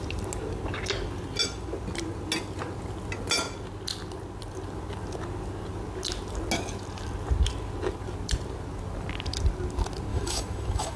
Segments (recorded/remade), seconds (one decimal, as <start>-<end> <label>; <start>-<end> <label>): 0.0-10.1 recorded; 10.1-11.0 remade